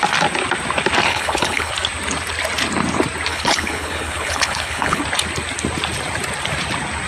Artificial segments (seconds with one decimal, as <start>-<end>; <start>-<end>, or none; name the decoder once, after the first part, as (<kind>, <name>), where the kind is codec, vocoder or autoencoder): 1.1-1.7 (codec, HILCodec); 3.3-5.0

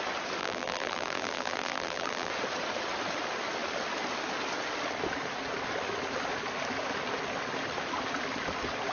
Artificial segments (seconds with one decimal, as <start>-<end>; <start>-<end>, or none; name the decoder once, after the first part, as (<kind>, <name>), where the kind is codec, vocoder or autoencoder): 0.4-2.3 (vocoder, BigVGAN v2)

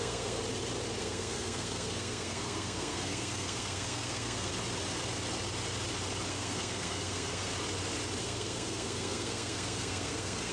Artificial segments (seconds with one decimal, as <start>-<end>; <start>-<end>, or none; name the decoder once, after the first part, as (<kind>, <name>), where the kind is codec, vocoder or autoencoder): 0.0-0.4 (codec, SNAC); 1.0-4.5; 6.3-7.5; 8.2-10.5

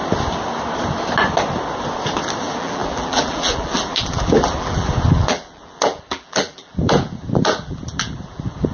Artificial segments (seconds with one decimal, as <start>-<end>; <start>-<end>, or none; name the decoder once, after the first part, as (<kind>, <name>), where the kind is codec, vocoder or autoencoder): 2.4-8.7 (vocoder, BigVGAN v2)

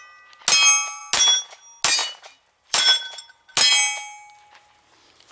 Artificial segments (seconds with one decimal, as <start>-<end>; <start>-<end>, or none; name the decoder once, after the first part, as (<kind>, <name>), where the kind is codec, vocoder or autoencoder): 2.0-3.2 (vocoder, BigVGAN v2)